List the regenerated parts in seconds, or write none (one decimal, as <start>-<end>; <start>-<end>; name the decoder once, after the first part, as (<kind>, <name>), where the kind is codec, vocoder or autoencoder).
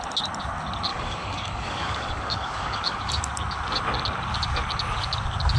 0.9-3.2 (codec, DAC)